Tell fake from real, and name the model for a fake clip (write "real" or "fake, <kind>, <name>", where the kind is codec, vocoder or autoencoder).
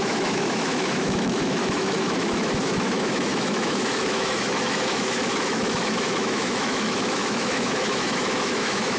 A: fake, autoencoder, DAC-VAE